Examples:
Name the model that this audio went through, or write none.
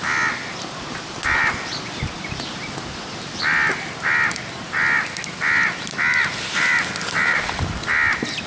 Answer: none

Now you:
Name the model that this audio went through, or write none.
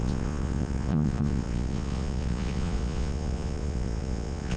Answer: vocoder, Vocos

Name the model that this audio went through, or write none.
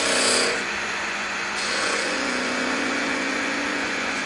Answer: vocoder, Vocos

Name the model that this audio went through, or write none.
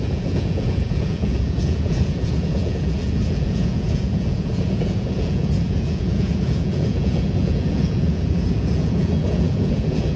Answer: vocoder, Vocos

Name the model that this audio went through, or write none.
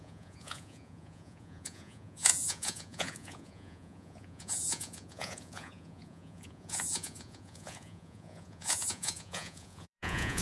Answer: vocoder, Vocos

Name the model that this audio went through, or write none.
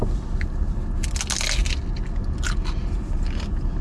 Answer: none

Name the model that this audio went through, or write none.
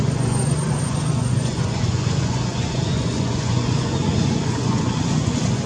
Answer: vocoder, Vocos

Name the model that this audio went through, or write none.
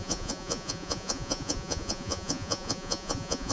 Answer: vocoder, Vocos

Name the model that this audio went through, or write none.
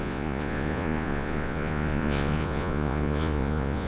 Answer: vocoder, Vocos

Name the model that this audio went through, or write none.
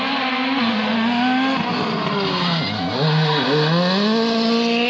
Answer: none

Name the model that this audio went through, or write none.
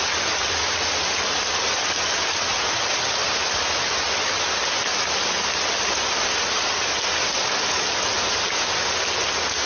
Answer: none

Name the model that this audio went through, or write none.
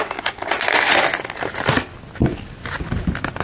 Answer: none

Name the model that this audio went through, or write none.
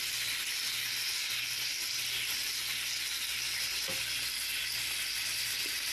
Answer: none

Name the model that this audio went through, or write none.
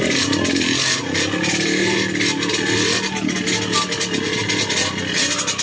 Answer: none